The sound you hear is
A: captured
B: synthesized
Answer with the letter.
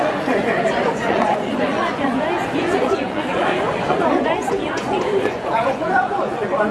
B